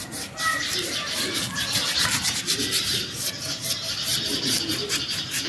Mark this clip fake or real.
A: real